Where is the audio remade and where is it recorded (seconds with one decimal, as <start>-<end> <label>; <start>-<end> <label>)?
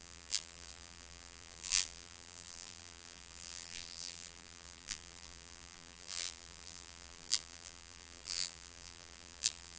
0.0-9.8 remade